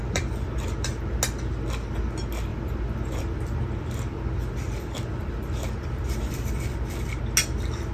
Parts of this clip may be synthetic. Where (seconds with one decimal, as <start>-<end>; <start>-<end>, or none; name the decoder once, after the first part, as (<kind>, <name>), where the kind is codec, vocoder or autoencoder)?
0.0-0.9 (vocoder, BigVGAN v2); 2.5-7.2